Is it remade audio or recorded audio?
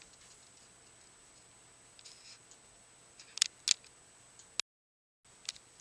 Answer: recorded